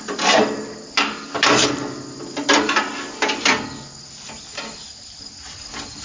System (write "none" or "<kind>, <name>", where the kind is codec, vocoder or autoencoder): none